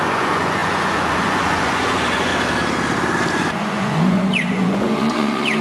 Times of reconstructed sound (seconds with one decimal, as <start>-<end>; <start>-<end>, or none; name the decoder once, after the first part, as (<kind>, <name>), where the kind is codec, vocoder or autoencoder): 0.0-2.3 (vocoder, Vocos); 3.3-5.6